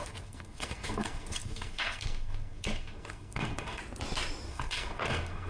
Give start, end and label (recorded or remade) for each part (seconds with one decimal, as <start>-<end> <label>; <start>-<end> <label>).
0.0-3.8 remade; 3.8-4.5 recorded; 4.5-5.5 remade